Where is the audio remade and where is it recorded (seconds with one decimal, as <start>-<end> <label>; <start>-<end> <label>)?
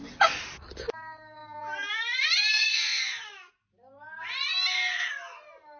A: 0.0-5.8 recorded